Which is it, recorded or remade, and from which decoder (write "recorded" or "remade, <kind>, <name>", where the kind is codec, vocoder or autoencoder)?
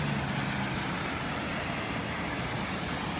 recorded